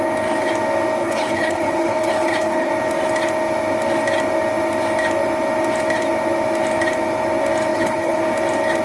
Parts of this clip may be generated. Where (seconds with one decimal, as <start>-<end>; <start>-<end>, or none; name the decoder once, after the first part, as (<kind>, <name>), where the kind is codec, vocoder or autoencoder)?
1.0-2.7 (codec, HILCodec); 7.7-8.2